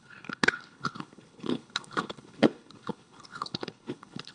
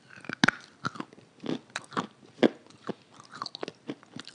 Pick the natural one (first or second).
second